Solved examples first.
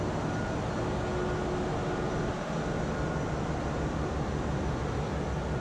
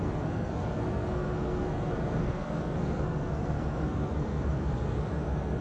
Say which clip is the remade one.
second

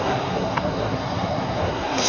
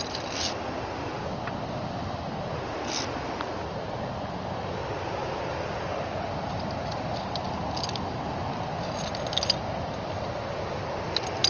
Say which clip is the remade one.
first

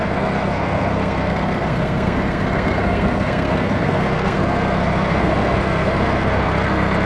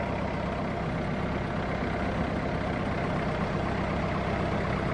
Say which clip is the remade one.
first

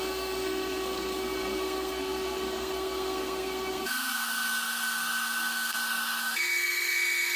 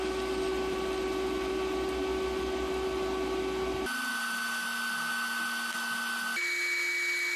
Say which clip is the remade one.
first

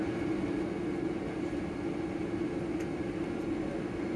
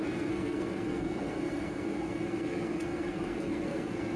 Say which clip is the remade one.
second